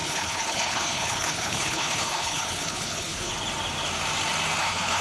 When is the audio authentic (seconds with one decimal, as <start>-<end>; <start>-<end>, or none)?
3.3-4.6